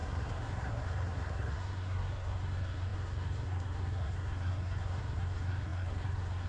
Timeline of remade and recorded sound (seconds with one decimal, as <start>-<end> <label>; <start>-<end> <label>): 0.0-6.5 remade